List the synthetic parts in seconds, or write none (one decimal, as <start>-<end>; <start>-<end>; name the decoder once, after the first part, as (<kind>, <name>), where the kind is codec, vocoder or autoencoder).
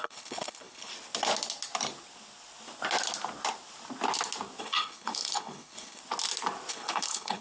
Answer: 0.0-0.9 (codec, HILCodec); 4.6-6.0; 6.7-7.4